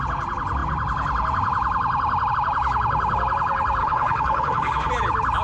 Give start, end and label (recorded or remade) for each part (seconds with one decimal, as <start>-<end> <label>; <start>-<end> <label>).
0.0-3.8 recorded; 3.8-4.9 remade; 4.9-5.4 recorded